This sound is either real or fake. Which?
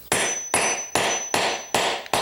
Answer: real